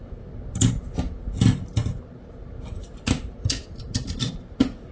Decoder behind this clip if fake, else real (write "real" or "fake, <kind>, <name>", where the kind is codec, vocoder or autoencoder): real